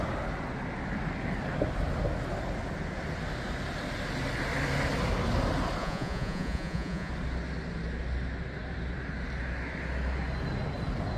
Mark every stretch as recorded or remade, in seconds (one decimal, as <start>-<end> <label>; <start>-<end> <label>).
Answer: 0.0-5.8 recorded; 5.8-7.1 remade; 7.1-11.2 recorded